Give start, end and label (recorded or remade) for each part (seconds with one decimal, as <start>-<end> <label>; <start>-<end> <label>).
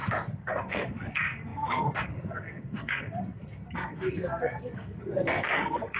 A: 0.0-6.0 remade